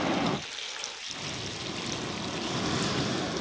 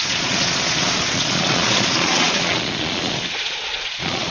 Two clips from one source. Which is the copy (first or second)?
second